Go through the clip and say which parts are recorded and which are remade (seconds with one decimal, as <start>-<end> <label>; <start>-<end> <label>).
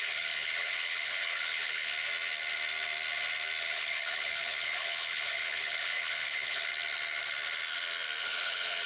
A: 0.0-1.9 remade; 1.9-3.6 recorded; 3.6-6.7 remade; 6.7-8.2 recorded; 8.2-8.9 remade